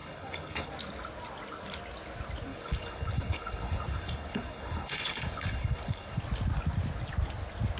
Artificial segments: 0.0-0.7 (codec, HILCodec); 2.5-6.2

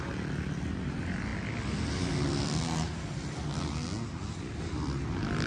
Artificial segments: none

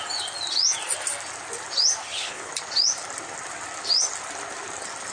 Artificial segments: 2.0-2.5 (codec, HILCodec)

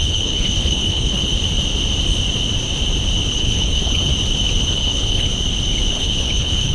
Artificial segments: 0.0-1.3 (codec, HILCodec); 3.3-4.1; 4.7-5.3; 5.9-6.7

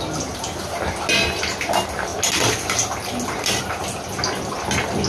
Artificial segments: none

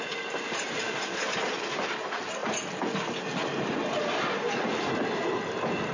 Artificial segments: none

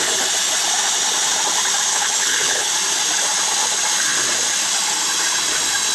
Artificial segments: 1.9-2.7 (codec, HILCodec)

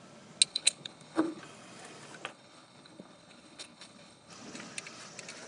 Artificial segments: 0.5-1.4 (codec, HILCodec); 2.3-4.3